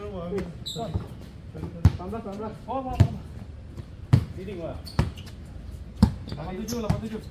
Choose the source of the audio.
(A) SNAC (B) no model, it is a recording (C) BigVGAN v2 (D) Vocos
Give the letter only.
B